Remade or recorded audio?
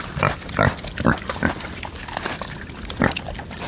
recorded